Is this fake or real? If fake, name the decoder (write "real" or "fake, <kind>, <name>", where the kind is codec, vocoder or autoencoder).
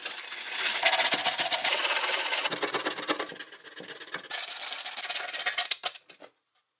real